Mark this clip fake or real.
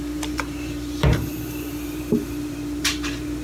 fake